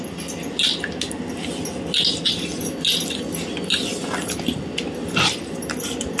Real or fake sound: real